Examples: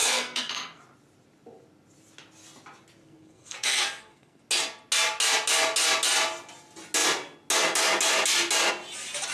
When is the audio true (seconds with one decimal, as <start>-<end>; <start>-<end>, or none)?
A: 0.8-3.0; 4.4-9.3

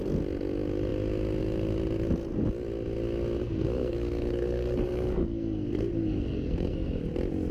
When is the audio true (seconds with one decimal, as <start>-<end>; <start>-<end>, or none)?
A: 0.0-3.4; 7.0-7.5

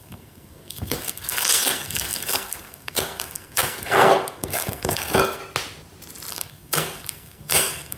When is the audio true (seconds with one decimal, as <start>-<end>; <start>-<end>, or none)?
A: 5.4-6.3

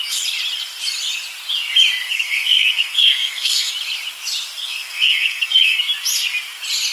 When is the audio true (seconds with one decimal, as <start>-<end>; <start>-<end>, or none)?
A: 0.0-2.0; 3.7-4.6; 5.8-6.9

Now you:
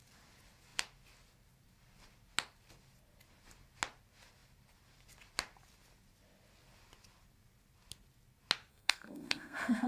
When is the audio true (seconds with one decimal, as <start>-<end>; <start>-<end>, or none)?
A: 0.0-8.7